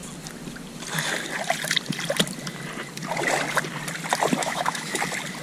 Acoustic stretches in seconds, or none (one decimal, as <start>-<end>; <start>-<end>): 0.0-4.4; 5.0-5.4